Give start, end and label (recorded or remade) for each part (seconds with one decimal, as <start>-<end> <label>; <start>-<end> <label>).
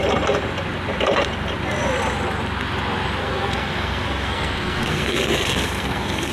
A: 0.0-3.2 recorded; 3.2-6.3 remade